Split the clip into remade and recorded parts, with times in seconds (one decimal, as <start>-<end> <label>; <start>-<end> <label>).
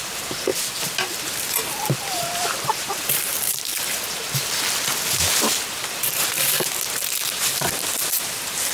0.0-0.5 remade; 0.5-1.2 recorded; 1.2-3.7 remade; 3.7-8.1 recorded; 8.1-8.7 remade